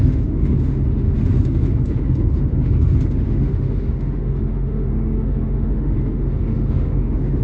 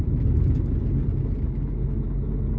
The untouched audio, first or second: second